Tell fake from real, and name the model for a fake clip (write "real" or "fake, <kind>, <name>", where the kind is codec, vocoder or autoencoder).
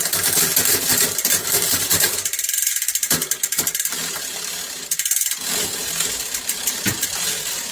real